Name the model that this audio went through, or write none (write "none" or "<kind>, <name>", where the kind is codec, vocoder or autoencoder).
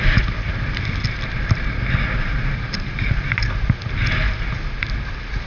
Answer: none